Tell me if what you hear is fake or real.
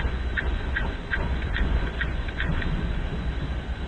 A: fake